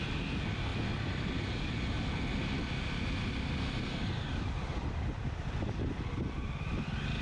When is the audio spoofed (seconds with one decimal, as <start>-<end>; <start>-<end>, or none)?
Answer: none